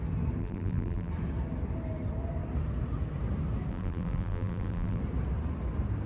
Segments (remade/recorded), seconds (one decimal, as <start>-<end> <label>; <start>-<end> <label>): 0.0-0.4 recorded; 0.4-1.1 remade; 1.1-3.7 recorded; 3.7-5.0 remade; 5.0-6.1 recorded